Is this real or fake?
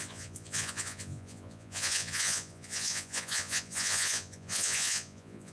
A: fake